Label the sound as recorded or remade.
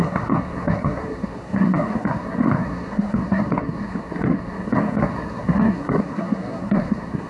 remade